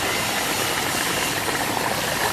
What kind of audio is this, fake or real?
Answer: real